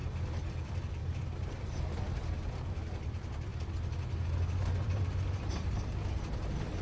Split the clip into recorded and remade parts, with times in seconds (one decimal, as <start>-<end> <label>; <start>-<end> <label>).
0.0-0.5 recorded; 0.5-1.0 remade; 1.0-2.7 recorded; 2.7-3.5 remade; 3.5-4.6 recorded; 4.6-6.8 remade